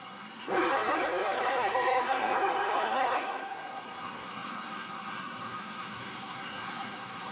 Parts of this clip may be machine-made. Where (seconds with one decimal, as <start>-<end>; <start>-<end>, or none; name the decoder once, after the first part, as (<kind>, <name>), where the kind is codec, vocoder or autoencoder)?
0.0-7.3 (codec, SNAC)